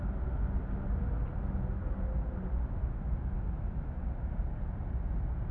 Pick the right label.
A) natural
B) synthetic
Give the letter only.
A